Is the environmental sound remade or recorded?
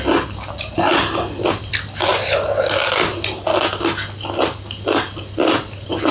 recorded